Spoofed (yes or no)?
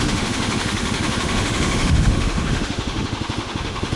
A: yes